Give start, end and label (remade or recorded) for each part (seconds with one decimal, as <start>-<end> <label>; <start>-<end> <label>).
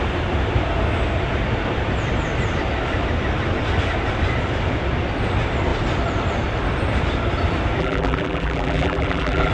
0.0-7.8 recorded; 7.8-9.5 remade